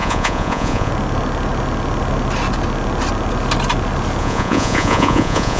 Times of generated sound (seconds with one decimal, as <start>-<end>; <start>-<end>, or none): 0.0-0.9; 4.2-5.6